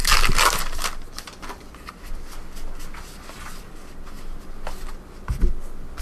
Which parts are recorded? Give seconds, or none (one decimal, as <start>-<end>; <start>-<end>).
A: 0.0-6.0